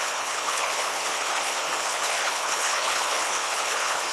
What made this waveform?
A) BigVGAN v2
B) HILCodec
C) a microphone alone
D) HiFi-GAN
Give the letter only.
B